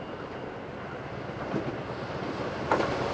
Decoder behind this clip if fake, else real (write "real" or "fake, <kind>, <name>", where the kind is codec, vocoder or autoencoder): real